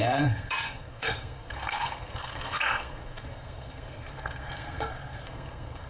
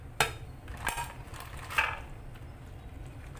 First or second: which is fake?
first